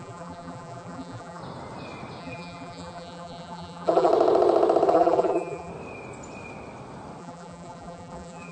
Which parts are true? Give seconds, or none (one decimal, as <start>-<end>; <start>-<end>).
1.4-2.2; 4.1-4.9; 5.7-7.2